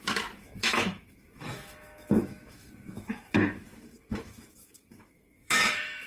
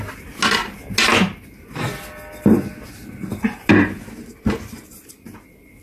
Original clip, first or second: second